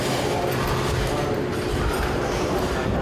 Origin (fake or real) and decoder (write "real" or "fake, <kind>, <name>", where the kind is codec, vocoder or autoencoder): real